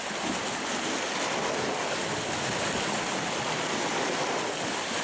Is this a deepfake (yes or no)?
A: no